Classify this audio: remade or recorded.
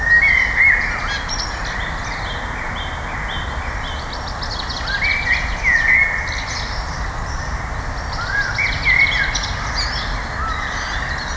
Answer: recorded